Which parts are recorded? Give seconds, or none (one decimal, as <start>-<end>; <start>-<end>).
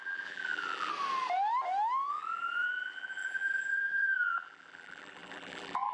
0.9-2.1